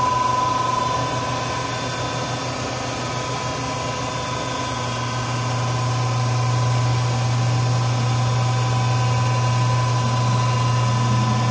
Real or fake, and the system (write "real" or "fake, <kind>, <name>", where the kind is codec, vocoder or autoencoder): real